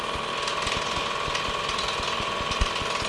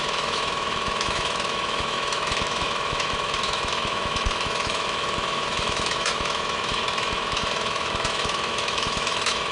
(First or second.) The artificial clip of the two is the second